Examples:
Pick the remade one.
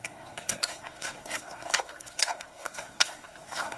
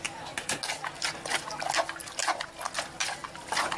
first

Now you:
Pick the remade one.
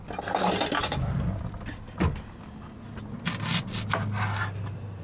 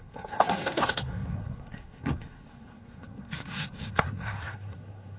second